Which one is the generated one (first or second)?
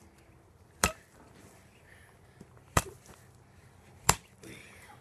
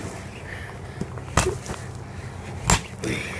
first